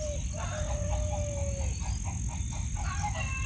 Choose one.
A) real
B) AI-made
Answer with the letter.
A